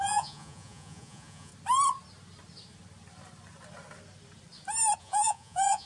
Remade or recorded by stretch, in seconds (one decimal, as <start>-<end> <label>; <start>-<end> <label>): 0.0-1.5 remade; 1.5-5.0 recorded; 5.0-5.9 remade